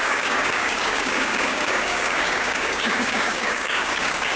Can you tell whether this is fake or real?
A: fake